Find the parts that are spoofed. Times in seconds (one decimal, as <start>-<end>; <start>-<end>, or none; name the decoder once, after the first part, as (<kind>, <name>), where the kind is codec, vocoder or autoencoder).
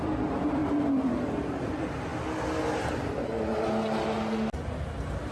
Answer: 0.0-2.1 (vocoder, BigVGAN v2)